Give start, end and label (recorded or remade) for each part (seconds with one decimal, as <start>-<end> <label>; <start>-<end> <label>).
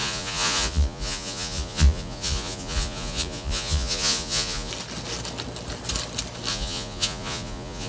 0.0-4.7 remade; 4.7-6.5 recorded; 6.5-7.9 remade